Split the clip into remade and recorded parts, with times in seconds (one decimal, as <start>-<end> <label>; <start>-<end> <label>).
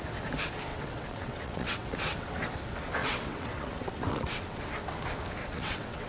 0.0-0.7 recorded; 0.7-2.6 remade; 2.6-3.0 recorded; 3.0-4.6 remade; 4.6-5.4 recorded; 5.4-6.1 remade